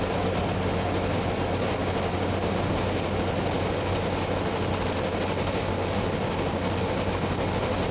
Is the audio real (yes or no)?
yes